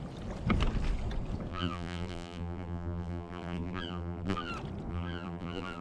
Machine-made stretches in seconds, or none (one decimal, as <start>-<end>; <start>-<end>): 1.5-4.5; 4.9-5.8